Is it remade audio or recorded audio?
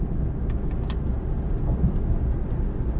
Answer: recorded